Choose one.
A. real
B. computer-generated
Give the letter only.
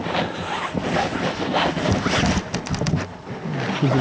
A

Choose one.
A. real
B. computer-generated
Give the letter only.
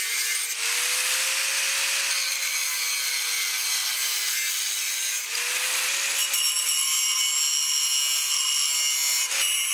A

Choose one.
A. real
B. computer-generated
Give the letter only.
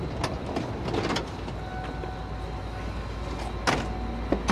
A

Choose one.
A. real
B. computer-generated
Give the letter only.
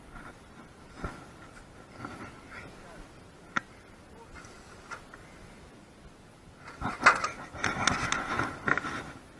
A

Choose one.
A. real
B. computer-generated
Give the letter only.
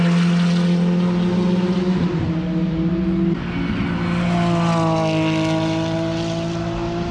A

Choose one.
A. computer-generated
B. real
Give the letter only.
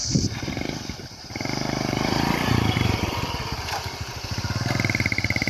A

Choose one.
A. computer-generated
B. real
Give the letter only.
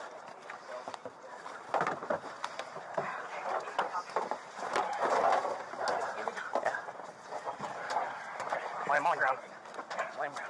A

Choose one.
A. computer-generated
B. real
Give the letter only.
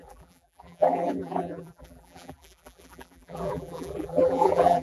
A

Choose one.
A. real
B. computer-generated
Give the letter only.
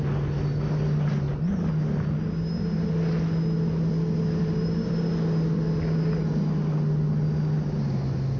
A